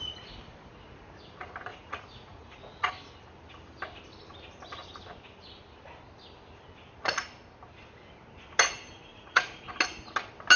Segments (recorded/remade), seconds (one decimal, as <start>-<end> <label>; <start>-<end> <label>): 0.0-1.7 recorded; 1.7-2.9 remade; 2.9-9.1 recorded; 9.1-9.7 remade; 9.7-10.6 recorded